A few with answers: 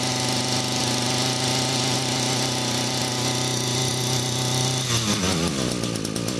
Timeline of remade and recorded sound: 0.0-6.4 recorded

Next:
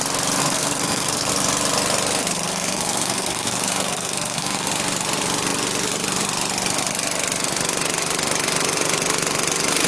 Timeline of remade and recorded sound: 0.0-0.4 recorded; 0.4-1.3 remade; 1.3-2.2 recorded; 2.2-4.7 remade; 4.7-9.9 recorded

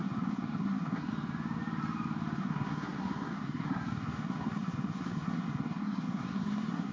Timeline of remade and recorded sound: 0.0-1.1 remade; 1.1-2.4 recorded; 2.4-6.9 remade

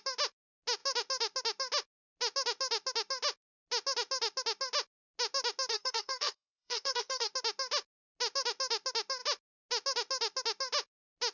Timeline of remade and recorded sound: 0.0-5.7 recorded; 5.7-7.3 remade; 7.3-11.3 recorded

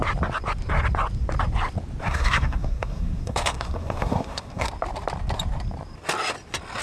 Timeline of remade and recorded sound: 0.0-2.0 recorded; 2.0-4.7 remade; 4.7-6.8 recorded

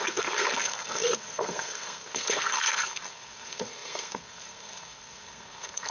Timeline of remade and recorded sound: 0.0-5.9 remade

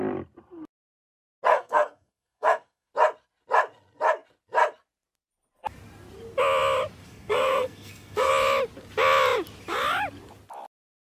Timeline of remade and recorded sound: 0.0-1.5 recorded; 1.5-2.9 remade; 2.9-7.0 recorded; 7.0-8.3 remade; 8.3-11.1 recorded

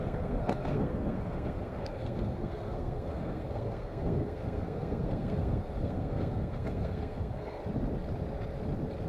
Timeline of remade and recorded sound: 0.0-7.6 remade; 7.6-9.1 recorded